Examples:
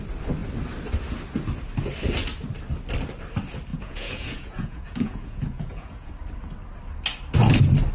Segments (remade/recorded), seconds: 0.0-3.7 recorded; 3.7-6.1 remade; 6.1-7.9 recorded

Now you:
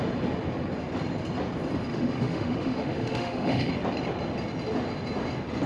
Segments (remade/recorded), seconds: 0.0-1.9 recorded; 1.9-3.7 remade; 3.7-5.7 recorded